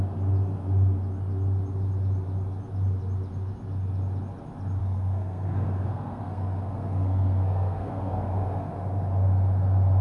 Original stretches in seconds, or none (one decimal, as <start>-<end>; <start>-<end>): 0.0-4.8; 8.7-10.0